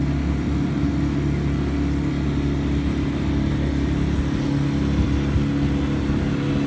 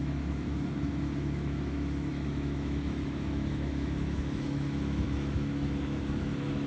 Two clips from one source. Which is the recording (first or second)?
first